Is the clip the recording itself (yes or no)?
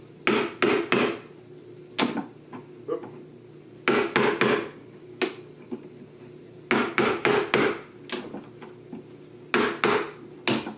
yes